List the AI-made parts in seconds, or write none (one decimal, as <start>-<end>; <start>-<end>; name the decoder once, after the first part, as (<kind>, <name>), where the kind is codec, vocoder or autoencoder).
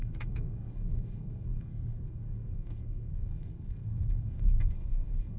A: 0.0-5.4 (codec, SNAC)